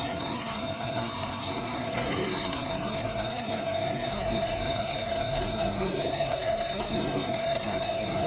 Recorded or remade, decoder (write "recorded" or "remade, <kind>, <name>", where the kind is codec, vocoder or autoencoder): remade, codec, SNAC